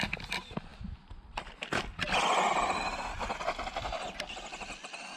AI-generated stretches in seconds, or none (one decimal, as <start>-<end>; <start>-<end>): none